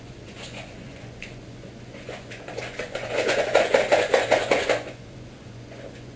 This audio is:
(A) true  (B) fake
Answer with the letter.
B